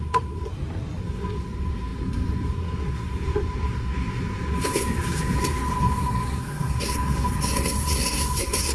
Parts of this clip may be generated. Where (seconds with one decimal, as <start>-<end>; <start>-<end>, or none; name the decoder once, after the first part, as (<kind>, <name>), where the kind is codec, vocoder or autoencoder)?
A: 0.0-0.5 (codec, SNAC); 1.0-8.7